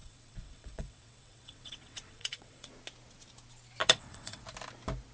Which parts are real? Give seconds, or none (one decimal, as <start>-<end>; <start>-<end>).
2.7-3.8; 4.4-5.1